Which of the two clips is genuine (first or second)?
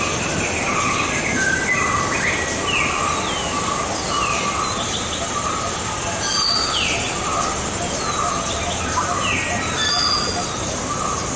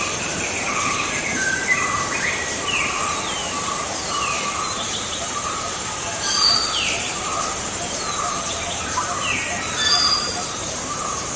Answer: first